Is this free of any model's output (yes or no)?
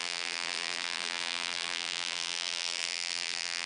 no